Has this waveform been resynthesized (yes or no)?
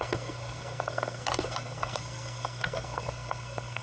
yes